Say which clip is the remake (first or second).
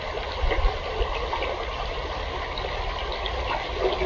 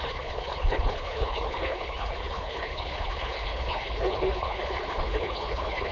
second